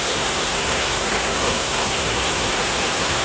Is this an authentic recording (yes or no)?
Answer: no